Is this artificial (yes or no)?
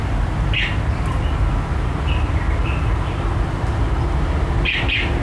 no